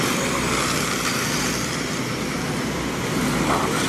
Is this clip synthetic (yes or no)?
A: no